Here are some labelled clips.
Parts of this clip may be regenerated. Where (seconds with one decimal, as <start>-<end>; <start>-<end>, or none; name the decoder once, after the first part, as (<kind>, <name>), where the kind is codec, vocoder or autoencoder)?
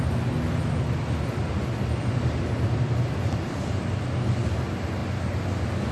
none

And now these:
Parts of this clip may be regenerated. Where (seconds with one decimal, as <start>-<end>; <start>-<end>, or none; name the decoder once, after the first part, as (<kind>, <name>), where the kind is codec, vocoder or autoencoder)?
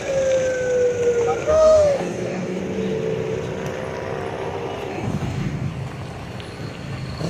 1.5-2.6 (codec, DAC); 4.9-5.7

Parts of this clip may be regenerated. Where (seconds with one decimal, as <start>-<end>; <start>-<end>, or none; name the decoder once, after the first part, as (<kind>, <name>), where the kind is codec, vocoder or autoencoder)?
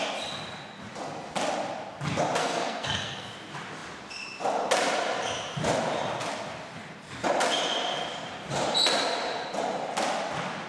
2.4-3.3 (codec, SNAC)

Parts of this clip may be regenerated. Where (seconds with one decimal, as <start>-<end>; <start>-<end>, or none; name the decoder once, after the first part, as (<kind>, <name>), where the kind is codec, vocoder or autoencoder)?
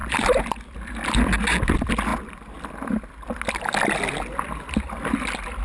0.0-1.1 (vocoder, BigVGAN v2)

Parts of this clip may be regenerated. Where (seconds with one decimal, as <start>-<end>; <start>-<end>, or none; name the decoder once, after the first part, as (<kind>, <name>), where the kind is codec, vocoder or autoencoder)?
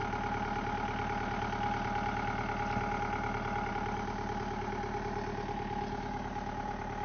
none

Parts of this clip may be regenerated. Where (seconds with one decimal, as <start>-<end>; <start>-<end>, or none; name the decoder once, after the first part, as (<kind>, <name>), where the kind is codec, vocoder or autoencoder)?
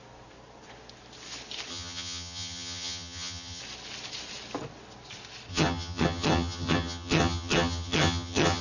1.7-3.6 (vocoder, HiFi-GAN); 5.5-8.6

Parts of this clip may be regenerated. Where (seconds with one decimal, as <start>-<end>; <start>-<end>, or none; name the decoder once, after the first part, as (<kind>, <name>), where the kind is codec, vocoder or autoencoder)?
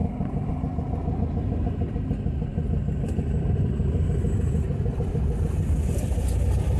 0.0-0.5 (vocoder, BigVGAN v2); 2.5-6.3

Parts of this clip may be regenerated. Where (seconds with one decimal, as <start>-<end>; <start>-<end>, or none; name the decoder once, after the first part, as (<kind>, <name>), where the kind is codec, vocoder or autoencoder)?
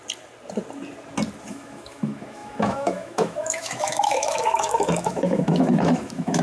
1.5-6.4 (autoencoder, DAC-VAE)